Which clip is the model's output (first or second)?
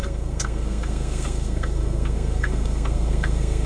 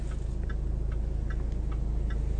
first